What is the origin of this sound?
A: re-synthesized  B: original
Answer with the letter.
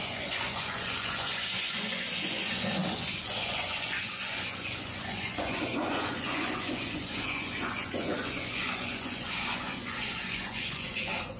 A